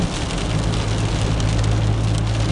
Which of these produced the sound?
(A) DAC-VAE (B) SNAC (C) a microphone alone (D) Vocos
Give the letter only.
C